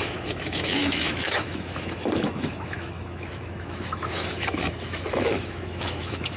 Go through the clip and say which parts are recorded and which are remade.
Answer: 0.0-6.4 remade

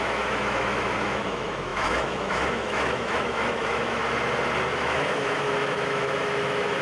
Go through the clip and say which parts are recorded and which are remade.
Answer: 0.0-4.0 remade; 4.0-4.7 recorded; 4.7-6.8 remade

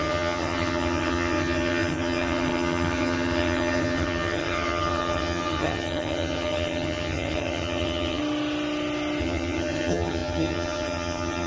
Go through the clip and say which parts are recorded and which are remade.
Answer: 0.0-8.2 remade; 8.2-9.2 recorded; 9.2-11.5 remade

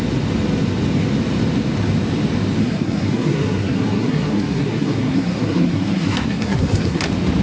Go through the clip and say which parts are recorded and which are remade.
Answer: 0.0-2.6 recorded; 2.6-7.0 remade; 7.0-7.4 recorded

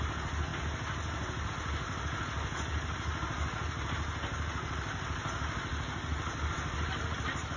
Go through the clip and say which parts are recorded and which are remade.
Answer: 0.0-7.6 recorded

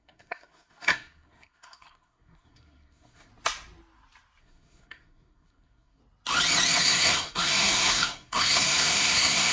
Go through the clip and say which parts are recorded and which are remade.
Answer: 0.0-3.3 remade; 3.3-4.4 recorded; 4.4-6.0 remade; 6.0-6.8 recorded; 6.8-9.5 remade

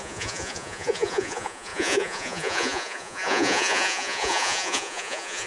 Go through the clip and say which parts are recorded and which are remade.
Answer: 0.0-5.5 remade

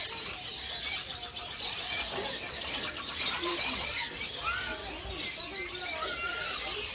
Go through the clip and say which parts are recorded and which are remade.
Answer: 0.0-6.9 recorded